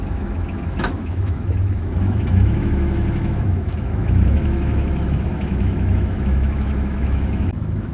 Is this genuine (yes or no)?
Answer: no